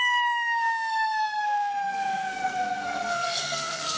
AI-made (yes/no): yes